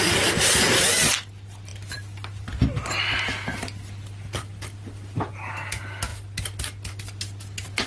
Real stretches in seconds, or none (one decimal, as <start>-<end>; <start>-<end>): 0.0-1.7; 2.5-7.9